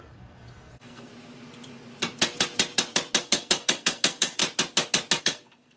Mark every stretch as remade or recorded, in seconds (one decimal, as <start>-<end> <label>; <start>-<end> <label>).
0.0-1.1 remade; 1.1-3.2 recorded; 3.2-4.4 remade; 4.4-5.2 recorded; 5.2-5.8 remade